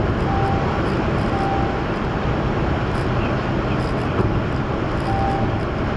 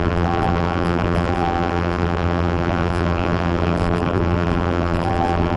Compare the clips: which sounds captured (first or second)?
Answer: first